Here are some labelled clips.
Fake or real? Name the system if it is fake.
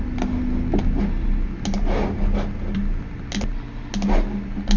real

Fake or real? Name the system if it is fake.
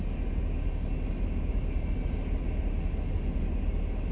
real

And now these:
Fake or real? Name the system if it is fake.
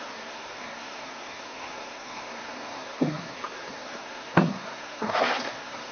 fake, codec, SNAC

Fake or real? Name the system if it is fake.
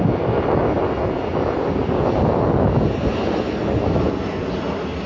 real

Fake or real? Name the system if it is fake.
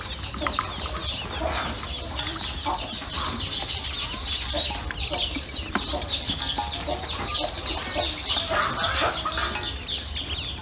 real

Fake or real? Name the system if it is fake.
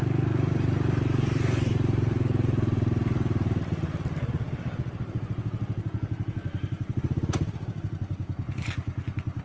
real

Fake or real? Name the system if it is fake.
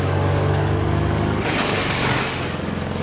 fake, codec, DAC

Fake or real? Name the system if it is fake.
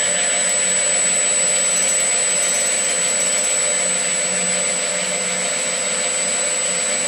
real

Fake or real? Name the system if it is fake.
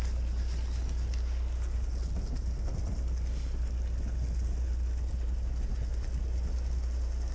real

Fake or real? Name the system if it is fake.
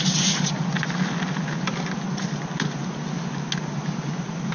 real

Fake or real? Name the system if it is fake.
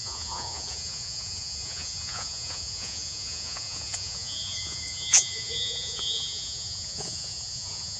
fake, vocoder, Vocos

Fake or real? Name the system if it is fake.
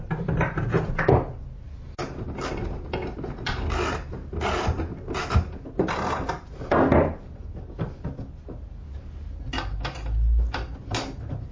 real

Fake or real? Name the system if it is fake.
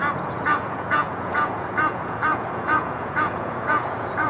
fake, vocoder, Vocos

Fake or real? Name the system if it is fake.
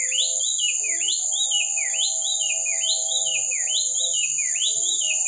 real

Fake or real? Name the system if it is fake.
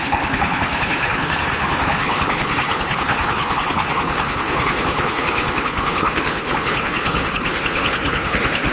fake, codec, HILCodec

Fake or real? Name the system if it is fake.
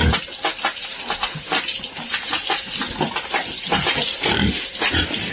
real